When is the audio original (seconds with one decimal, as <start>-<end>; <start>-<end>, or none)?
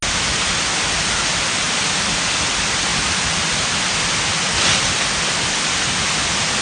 0.0-6.6